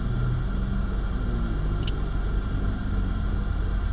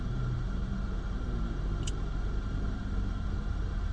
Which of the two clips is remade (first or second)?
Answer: second